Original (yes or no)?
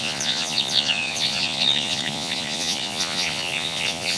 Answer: no